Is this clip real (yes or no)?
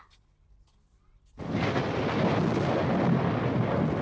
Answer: yes